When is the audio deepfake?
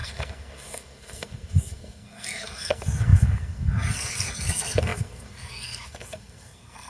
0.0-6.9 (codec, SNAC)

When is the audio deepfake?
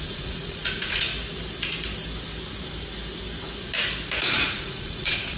0.0-1.1 (vocoder, Vocos); 4.3-5.4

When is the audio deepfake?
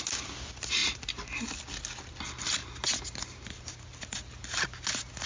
none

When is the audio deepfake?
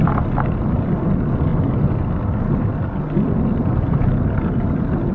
none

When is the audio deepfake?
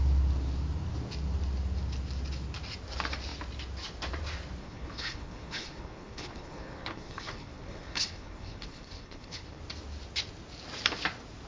4.6-9.6 (codec, HILCodec)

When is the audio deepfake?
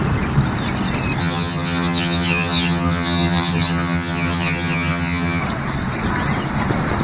1.2-5.4 (vocoder, HiFi-GAN)